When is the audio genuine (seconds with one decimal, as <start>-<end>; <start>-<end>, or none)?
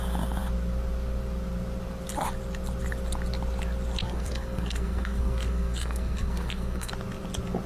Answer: 0.0-4.0; 6.9-7.7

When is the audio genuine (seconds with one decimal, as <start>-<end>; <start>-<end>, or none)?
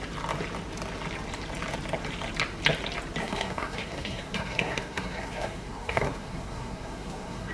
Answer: 0.0-3.2